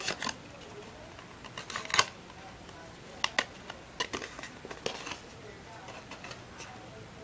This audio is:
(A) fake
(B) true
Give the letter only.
B